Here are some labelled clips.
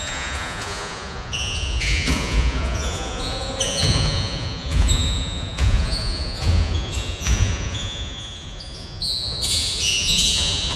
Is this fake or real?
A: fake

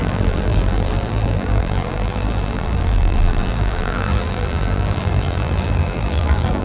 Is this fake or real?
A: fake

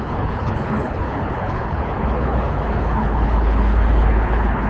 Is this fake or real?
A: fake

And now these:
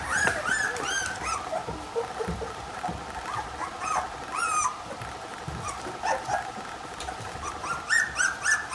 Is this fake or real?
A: fake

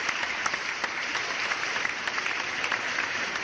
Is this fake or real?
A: fake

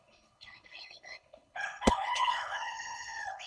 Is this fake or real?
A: fake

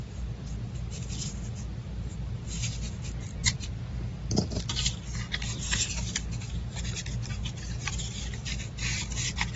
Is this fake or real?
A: real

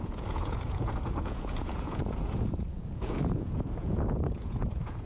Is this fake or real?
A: fake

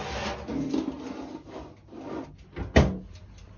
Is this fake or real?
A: real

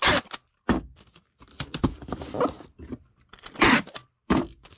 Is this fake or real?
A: real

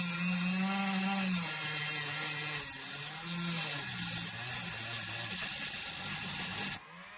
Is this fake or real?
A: real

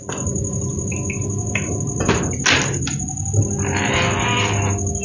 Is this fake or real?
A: real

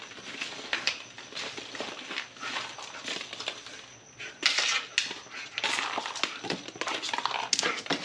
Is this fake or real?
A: real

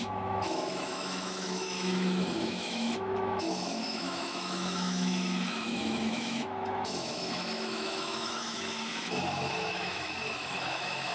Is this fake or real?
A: fake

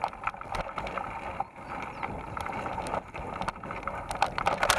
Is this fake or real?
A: real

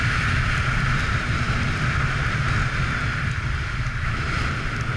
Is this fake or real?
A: real